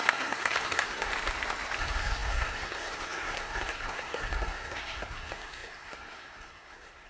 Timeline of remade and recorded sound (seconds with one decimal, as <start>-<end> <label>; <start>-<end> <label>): 0.0-1.1 remade; 1.1-1.8 recorded; 1.8-7.1 remade